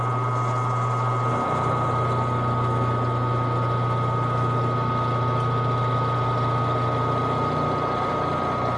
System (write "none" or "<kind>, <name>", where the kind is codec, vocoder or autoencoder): none